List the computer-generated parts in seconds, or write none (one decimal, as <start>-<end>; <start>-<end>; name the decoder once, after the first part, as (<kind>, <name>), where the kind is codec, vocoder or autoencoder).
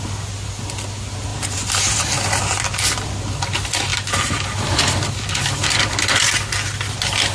1.3-2.0 (vocoder, BigVGAN v2); 3.9-4.6